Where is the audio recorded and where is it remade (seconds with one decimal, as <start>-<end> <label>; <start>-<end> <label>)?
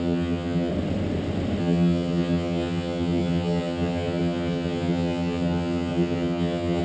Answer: 0.0-0.7 remade; 0.7-1.6 recorded; 1.6-6.8 remade